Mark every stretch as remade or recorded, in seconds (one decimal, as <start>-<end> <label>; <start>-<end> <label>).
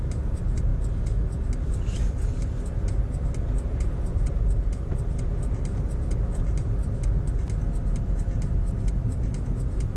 0.0-10.0 recorded